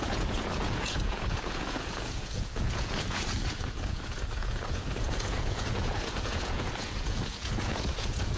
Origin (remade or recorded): remade